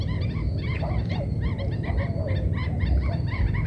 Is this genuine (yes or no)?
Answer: yes